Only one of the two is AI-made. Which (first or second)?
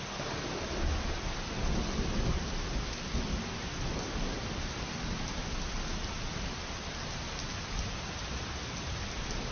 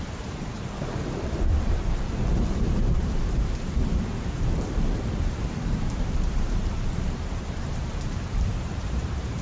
second